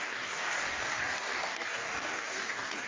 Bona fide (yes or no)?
no